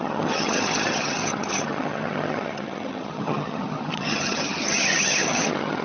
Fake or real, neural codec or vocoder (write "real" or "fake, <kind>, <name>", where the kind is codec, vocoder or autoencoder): fake, vocoder, HiFi-GAN